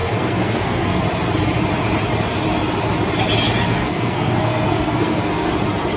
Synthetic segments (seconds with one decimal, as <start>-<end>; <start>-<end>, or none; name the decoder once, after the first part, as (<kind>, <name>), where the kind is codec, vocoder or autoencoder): 0.0-1.0 (codec, SNAC); 3.7-5.5